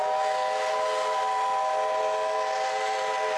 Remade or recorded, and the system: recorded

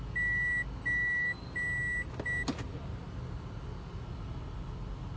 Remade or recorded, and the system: recorded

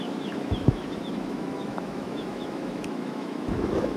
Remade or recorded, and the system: remade, autoencoder, DAC-VAE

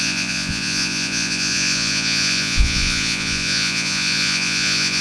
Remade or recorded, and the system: remade, vocoder, Vocos